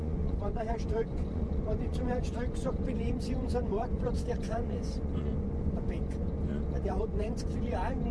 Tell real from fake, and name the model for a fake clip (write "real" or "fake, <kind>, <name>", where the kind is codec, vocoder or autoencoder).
fake, vocoder, Vocos